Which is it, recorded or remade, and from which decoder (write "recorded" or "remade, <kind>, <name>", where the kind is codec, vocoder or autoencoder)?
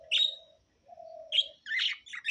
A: recorded